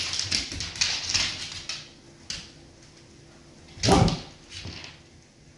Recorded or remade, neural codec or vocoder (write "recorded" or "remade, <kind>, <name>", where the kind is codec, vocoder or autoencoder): recorded